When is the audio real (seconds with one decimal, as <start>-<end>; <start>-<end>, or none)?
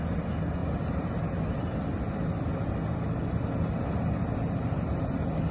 0.0-5.5